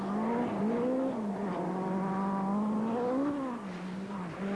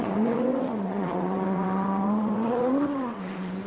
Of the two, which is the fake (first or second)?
second